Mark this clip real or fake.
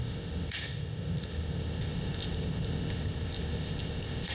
fake